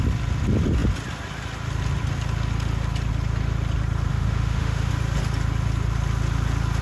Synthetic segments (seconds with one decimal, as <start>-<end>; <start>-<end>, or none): 4.1-4.9